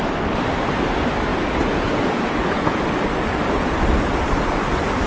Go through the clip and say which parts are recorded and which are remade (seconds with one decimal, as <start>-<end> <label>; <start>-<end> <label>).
0.0-1.3 recorded; 1.3-2.8 remade; 2.8-5.1 recorded